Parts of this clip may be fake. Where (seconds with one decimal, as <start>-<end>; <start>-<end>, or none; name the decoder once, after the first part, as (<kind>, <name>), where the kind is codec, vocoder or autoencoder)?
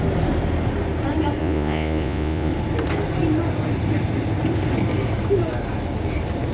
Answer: 1.4-2.5 (vocoder, Vocos)